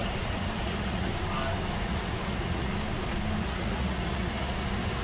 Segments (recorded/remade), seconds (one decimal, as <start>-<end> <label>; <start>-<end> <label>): 0.0-1.1 remade; 1.1-1.8 recorded; 1.8-2.7 remade; 2.7-3.4 recorded; 3.4-5.0 remade